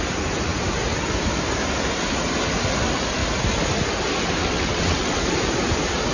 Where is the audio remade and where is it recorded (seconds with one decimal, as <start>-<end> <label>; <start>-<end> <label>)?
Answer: 0.0-4.4 recorded; 4.4-5.2 remade; 5.2-6.1 recorded